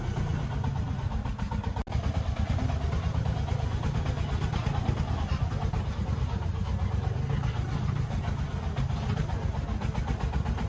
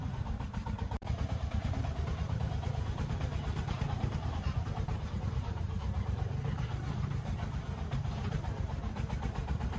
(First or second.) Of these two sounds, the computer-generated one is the second